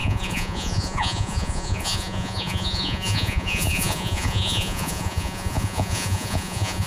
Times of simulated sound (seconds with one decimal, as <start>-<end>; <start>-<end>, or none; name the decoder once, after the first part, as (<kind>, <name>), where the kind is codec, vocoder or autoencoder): 0.0-6.9 (vocoder, Vocos)